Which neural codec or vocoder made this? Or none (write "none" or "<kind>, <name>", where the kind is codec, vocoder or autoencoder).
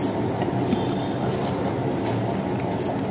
none